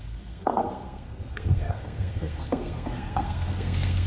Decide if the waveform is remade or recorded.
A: remade